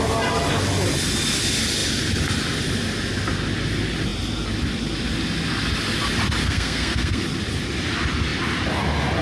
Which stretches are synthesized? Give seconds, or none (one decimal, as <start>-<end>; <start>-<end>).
6.4-7.2